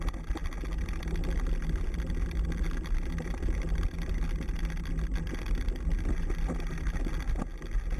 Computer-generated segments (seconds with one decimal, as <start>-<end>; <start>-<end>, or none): none